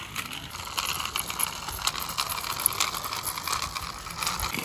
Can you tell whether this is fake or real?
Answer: real